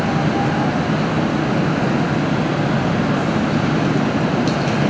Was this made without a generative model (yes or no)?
yes